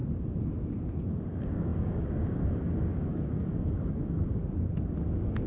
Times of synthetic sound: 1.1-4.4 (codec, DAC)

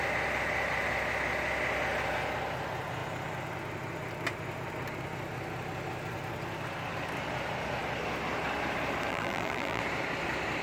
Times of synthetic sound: 9.1-9.8 (vocoder, BigVGAN v2)

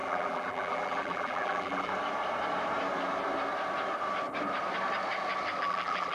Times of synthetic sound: 0.0-1.9 (vocoder, BigVGAN v2); 5.6-6.1

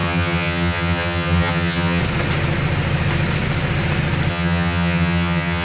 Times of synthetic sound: 0.0-2.0 (vocoder, HiFi-GAN); 4.3-5.6

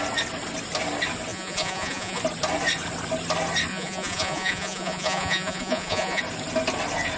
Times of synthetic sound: 1.3-2.2 (vocoder, Vocos); 3.7-6.2

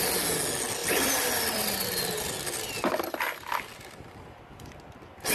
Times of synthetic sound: 0.8-2.7 (vocoder, BigVGAN v2); 3.7-4.7

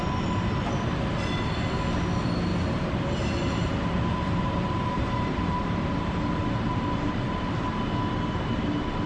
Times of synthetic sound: 2.5-7.5 (vocoder, BigVGAN v2)

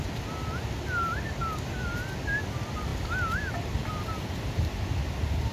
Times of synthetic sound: none